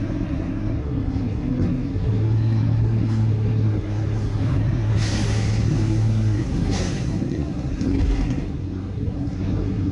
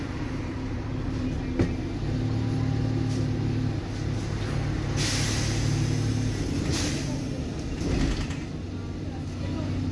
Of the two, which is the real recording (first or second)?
second